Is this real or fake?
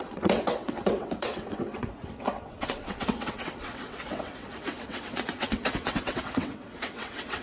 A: fake